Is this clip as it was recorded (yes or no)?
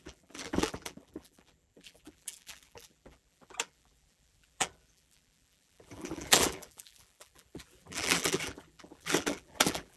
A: no